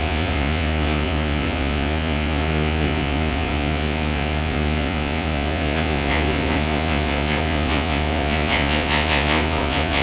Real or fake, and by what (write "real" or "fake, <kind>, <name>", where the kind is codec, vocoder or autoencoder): fake, vocoder, Vocos